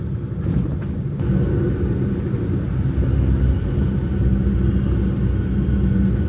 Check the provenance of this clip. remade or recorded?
recorded